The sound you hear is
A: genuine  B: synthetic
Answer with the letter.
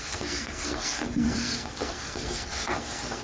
B